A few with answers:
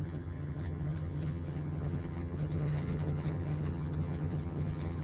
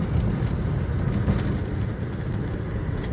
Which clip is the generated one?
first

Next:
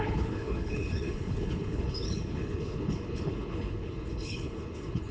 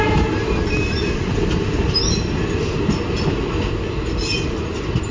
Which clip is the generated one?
first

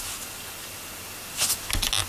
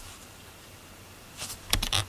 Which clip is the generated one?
second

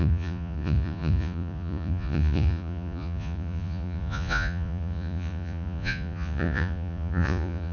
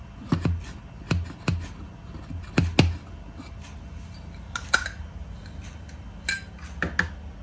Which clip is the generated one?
first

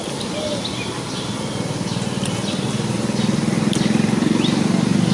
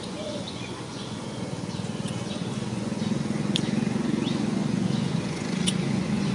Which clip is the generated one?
second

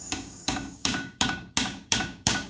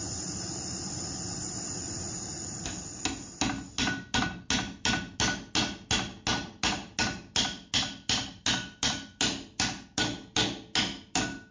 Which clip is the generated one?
first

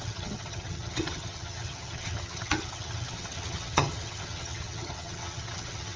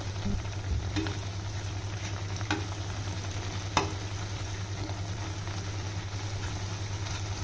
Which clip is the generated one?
first